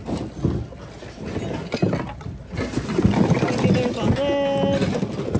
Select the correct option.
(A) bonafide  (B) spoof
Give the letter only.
A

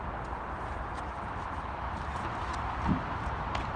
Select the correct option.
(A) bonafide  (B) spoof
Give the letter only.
A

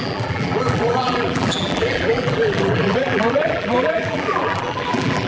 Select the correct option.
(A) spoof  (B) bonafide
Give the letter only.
A